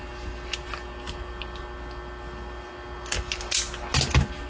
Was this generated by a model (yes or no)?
no